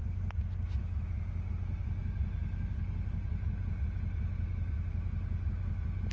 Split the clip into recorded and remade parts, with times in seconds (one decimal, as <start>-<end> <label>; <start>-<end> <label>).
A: 0.0-0.8 recorded; 0.8-1.5 remade; 1.5-6.1 recorded